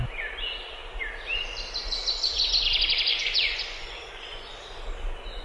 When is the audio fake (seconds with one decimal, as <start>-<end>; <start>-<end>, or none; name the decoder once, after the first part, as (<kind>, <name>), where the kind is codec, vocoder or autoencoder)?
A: 3.1-4.5 (vocoder, Vocos)